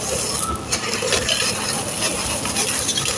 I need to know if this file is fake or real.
real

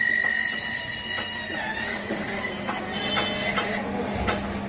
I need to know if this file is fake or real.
real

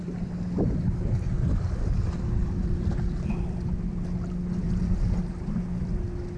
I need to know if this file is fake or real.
real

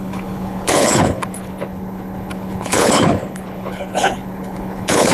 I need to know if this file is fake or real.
fake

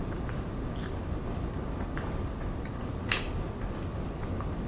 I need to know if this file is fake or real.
real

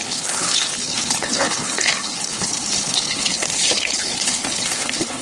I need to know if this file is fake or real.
fake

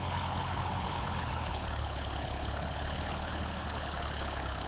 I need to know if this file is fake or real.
fake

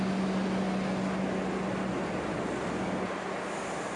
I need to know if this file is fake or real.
real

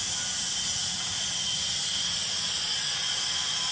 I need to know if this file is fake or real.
real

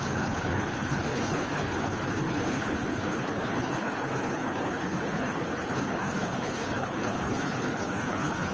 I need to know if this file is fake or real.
fake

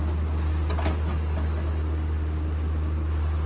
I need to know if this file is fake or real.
real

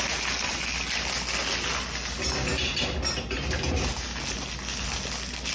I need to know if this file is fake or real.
real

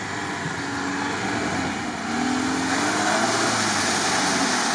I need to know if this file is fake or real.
real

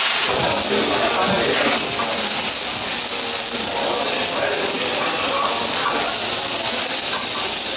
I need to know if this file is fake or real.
real